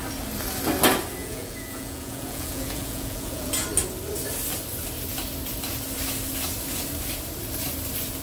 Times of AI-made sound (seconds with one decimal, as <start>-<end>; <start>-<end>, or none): 1.2-3.5